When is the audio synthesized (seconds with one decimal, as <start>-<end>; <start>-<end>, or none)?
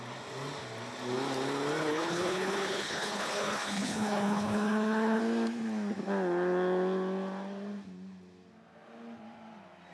1.8-5.2